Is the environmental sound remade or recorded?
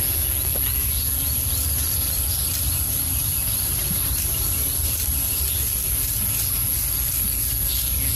recorded